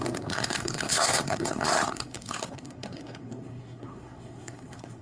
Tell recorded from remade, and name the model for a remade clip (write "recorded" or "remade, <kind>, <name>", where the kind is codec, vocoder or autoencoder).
remade, codec, SNAC